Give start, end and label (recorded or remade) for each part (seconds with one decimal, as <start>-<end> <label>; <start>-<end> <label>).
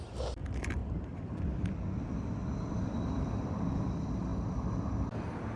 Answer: 0.0-5.6 recorded